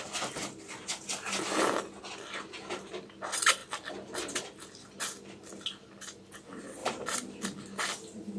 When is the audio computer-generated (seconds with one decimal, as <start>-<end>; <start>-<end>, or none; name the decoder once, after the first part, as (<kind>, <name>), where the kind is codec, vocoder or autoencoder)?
none